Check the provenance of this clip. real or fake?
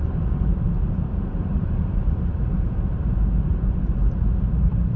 fake